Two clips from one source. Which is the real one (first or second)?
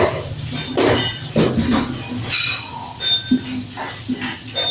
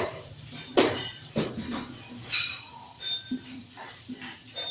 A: first